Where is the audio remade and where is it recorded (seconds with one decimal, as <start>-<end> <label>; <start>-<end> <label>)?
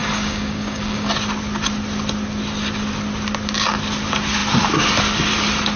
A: 0.0-1.1 remade; 1.1-5.8 recorded